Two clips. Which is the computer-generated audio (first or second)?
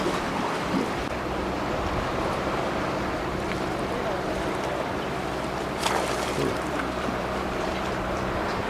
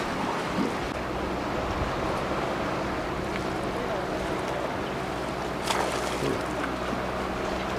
first